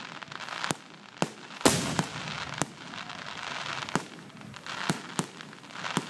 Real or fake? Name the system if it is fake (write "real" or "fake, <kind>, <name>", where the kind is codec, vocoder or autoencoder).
real